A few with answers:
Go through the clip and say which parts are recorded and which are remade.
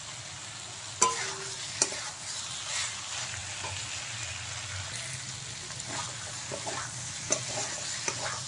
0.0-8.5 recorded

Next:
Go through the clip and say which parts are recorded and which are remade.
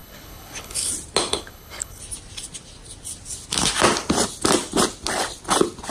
0.0-0.9 remade; 0.9-1.3 recorded; 1.3-2.0 remade; 2.0-5.9 recorded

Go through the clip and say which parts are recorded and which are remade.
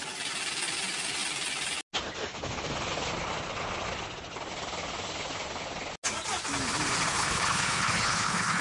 0.0-7.1 recorded; 7.1-8.6 remade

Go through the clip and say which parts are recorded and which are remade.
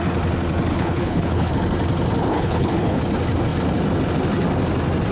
0.0-0.7 recorded; 0.7-1.5 remade; 1.5-2.3 recorded; 2.3-3.0 remade; 3.0-5.1 recorded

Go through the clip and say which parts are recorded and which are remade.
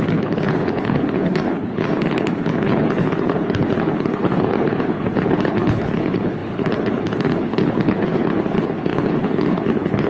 0.0-10.1 remade